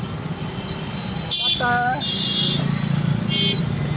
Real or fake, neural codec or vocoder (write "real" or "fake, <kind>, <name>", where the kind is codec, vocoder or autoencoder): real